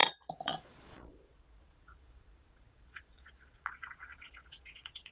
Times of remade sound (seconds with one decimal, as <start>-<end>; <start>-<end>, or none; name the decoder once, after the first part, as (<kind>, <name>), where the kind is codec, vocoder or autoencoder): 0.0-5.1 (vocoder, Vocos)